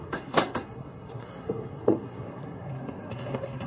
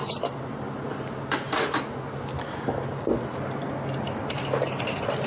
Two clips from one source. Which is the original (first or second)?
second